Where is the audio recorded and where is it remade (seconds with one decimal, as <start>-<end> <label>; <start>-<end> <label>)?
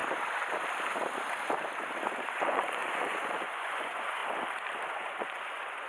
0.0-2.2 recorded; 2.2-4.2 remade; 4.2-4.9 recorded; 4.9-5.9 remade